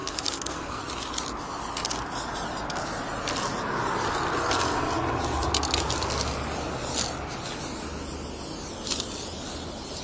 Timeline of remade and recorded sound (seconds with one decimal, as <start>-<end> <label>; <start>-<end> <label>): 0.0-0.8 remade; 0.8-10.0 recorded